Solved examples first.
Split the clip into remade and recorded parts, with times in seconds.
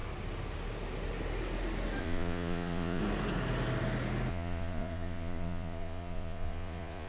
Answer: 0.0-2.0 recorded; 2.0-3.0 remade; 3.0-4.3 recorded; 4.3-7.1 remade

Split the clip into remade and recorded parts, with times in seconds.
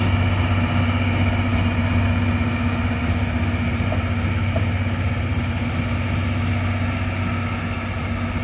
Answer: 0.0-8.4 recorded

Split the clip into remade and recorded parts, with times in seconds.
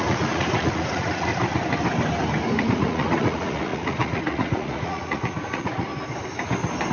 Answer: 0.0-1.3 remade; 1.3-2.6 recorded; 2.6-5.9 remade; 5.9-6.9 recorded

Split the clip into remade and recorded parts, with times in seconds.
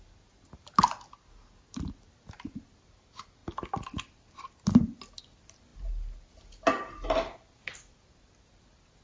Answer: 0.0-9.0 recorded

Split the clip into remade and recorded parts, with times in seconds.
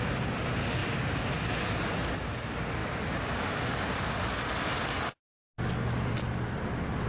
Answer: 0.0-7.1 recorded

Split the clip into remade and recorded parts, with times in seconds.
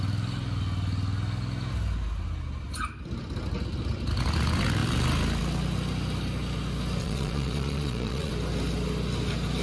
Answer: 0.0-7.0 recorded; 7.0-8.3 remade; 8.3-9.6 recorded